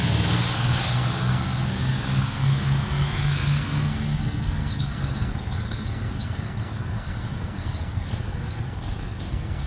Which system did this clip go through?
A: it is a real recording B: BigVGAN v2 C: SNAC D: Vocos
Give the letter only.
C